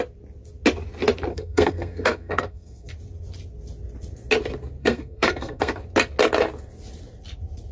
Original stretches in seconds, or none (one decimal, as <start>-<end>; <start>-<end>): 0.0-1.3; 2.9-4.8; 5.7-7.7